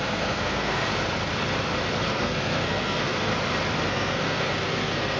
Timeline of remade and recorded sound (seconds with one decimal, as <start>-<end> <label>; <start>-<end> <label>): 0.0-0.9 remade; 0.9-2.1 recorded; 2.1-3.3 remade; 3.3-3.9 recorded; 3.9-5.2 remade